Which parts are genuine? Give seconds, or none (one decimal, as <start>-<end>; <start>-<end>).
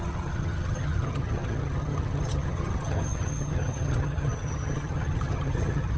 none